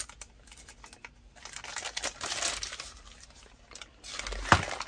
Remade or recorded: recorded